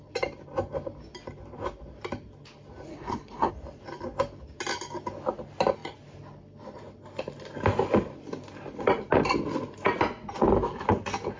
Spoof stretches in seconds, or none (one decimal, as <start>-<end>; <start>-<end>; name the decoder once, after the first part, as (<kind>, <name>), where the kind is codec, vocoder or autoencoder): 2.9-3.5 (codec, HILCodec)